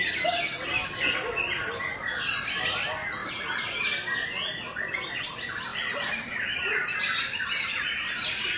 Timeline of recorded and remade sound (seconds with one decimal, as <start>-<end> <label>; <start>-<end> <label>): 0.0-5.7 recorded; 5.7-6.4 remade; 6.4-8.6 recorded